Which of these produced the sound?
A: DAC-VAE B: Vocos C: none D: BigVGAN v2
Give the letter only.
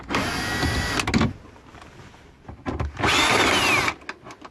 C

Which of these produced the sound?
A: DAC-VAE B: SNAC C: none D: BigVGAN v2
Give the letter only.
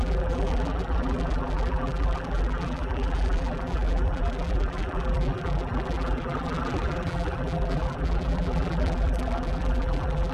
D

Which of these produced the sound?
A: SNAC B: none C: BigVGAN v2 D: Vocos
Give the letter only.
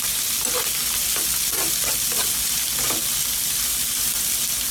B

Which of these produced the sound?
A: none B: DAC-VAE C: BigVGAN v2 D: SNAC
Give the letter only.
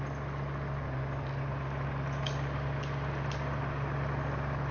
A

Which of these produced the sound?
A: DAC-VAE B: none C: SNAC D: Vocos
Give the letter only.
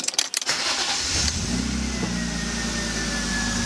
B